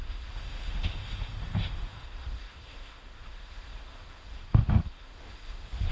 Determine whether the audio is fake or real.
fake